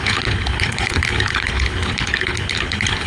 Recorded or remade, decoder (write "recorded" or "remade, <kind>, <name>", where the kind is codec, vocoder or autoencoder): remade, codec, HILCodec